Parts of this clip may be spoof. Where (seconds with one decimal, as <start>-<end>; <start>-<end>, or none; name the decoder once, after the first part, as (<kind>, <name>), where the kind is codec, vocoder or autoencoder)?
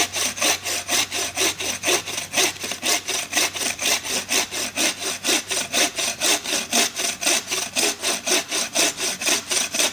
none